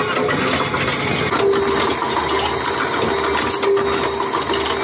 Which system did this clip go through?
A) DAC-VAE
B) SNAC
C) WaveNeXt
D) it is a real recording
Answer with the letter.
D